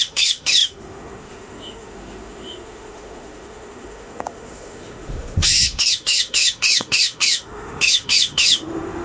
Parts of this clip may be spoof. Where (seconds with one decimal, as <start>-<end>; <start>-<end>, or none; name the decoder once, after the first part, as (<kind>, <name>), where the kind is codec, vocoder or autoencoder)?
0.0-9.0 (autoencoder, DAC-VAE)